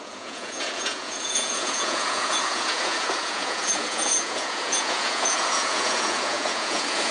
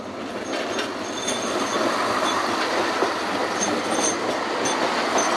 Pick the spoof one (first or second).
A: first